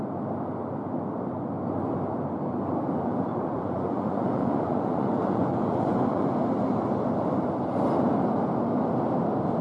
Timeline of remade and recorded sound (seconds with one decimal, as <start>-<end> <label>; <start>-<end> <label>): 0.0-3.3 recorded; 3.3-6.3 remade; 6.3-9.6 recorded